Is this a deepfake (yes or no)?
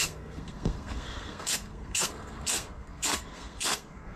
yes